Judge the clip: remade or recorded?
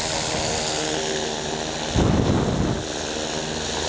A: recorded